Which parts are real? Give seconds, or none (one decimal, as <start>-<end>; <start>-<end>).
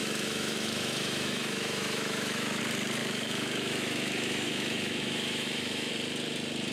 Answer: 2.6-3.0; 5.9-6.7